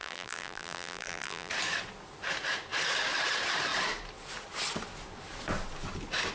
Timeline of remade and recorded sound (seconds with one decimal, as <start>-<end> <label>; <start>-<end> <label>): 0.0-1.5 remade; 1.5-6.3 recorded